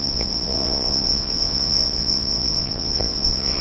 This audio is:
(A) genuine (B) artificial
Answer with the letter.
B